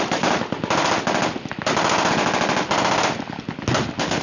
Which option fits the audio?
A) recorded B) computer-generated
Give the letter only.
A